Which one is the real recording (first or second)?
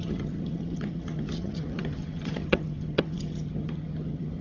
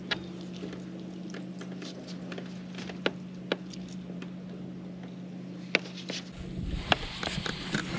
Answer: second